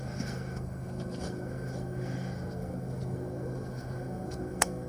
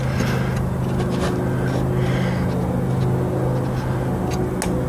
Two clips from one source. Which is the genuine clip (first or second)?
second